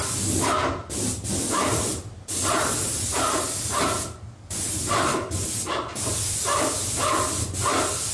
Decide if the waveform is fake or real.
real